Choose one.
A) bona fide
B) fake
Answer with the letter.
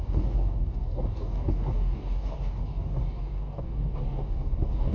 B